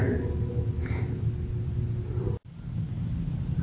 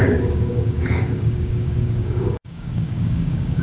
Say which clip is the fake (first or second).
second